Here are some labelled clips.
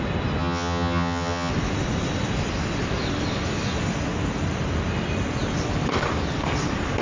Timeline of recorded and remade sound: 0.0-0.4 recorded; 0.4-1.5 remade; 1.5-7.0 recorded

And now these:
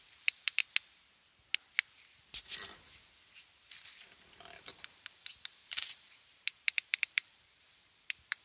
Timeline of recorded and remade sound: 0.0-0.6 remade; 0.6-4.6 recorded; 4.6-8.4 remade

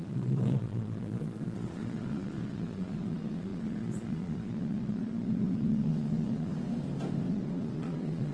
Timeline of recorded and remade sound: 0.0-6.5 remade; 6.5-7.3 recorded; 7.3-8.3 remade